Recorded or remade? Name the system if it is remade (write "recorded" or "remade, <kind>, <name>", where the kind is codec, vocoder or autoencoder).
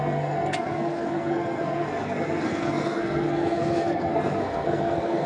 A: remade, codec, SNAC